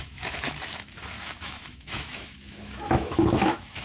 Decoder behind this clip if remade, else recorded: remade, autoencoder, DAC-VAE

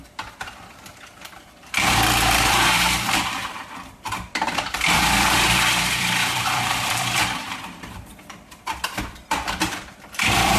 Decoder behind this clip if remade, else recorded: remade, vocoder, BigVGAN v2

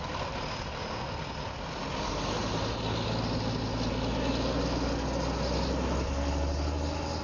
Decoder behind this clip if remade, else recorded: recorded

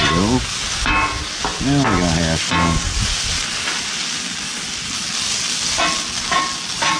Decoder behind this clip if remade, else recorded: recorded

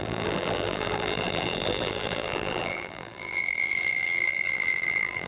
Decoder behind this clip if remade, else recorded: remade, vocoder, BigVGAN v2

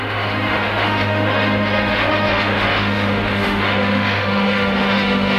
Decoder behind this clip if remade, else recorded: remade, autoencoder, DAC-VAE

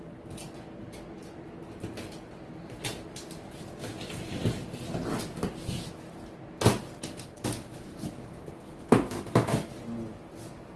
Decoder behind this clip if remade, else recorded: recorded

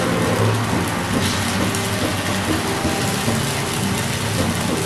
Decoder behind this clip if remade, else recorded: recorded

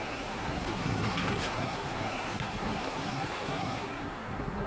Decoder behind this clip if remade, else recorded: remade, codec, SNAC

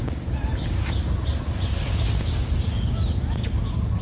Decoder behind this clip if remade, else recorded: recorded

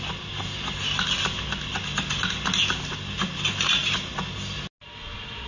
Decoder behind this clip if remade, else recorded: recorded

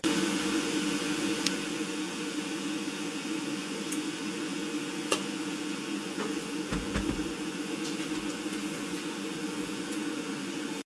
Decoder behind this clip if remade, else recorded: remade, vocoder, Vocos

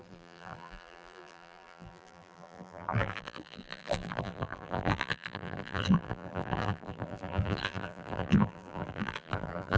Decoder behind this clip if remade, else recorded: remade, vocoder, BigVGAN v2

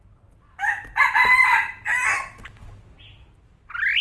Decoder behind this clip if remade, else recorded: recorded